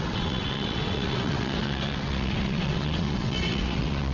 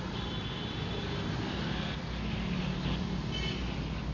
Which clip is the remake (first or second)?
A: first